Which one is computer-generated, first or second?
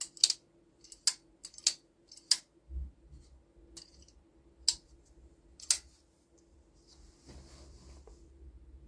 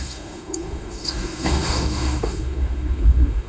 second